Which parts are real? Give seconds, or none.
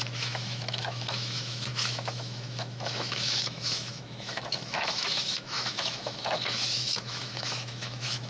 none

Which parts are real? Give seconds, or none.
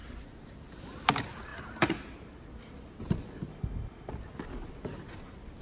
0.0-3.5; 4.1-5.6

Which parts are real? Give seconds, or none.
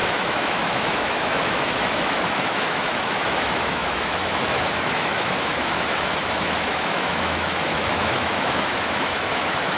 none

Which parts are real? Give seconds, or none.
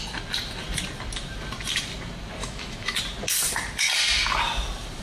0.0-2.4; 3.0-5.0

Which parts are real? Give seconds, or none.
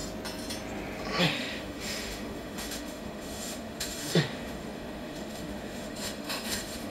0.0-1.2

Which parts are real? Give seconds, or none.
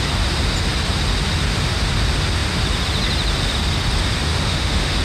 0.0-4.3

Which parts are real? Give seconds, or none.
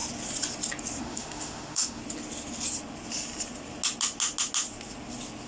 0.0-1.0; 2.0-5.5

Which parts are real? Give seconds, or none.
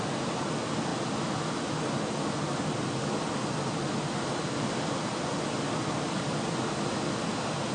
0.0-7.7